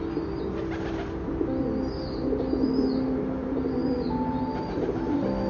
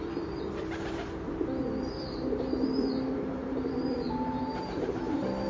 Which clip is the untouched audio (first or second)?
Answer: first